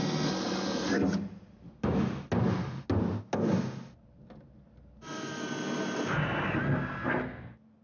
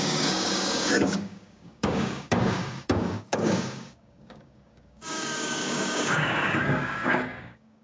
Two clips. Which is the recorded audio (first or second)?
first